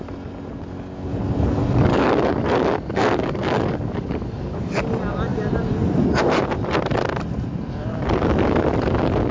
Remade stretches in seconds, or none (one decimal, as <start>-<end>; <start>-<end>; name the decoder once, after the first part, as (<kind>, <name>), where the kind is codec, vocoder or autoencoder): 1.9-4.8 (codec, DAC)